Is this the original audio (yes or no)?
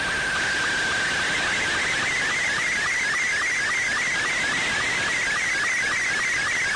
yes